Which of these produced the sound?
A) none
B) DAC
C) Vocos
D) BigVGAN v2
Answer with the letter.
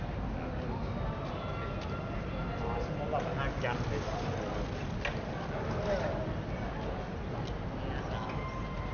A